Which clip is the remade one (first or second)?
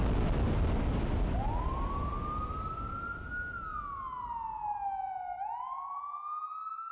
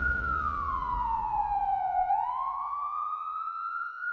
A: second